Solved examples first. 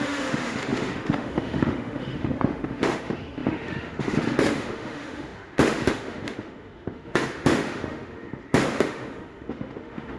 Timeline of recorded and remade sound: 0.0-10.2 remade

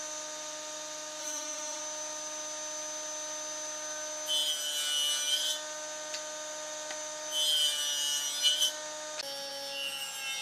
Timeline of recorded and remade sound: 0.0-1.2 recorded; 1.2-1.8 remade; 1.8-10.4 recorded

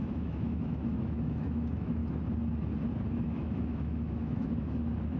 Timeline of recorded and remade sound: 0.0-2.0 remade; 2.0-3.1 recorded; 3.1-5.2 remade

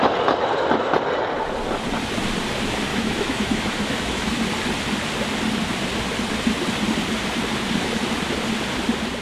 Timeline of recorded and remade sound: 0.0-2.9 recorded; 2.9-4.4 remade; 4.4-9.2 recorded

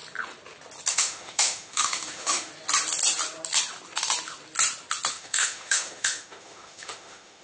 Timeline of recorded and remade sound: 0.0-0.9 recorded; 0.9-2.5 remade; 2.5-5.1 recorded; 5.1-7.4 remade

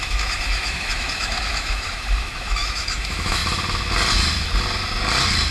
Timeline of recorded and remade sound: 0.0-3.4 remade; 3.4-5.5 recorded

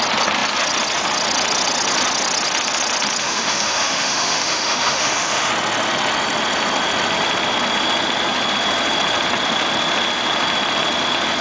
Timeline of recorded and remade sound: 0.0-3.2 recorded; 3.2-5.5 remade; 5.5-11.4 recorded